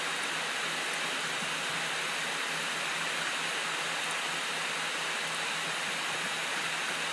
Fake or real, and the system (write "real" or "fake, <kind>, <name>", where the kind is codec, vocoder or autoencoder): real